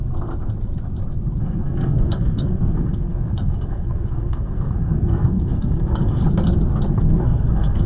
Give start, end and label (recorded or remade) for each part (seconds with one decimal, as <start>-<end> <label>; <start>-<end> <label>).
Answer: 0.0-1.4 recorded; 1.4-6.2 remade; 6.2-6.9 recorded; 6.9-7.9 remade